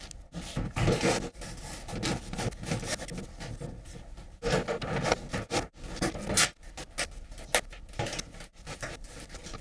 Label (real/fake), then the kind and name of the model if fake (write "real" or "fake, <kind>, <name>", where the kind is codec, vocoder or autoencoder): real